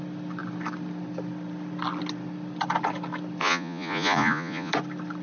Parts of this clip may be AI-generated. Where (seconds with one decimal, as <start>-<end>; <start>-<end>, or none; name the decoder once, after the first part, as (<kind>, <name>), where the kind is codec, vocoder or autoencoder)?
3.4-4.7 (vocoder, Vocos)